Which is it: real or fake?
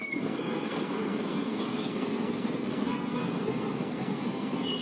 fake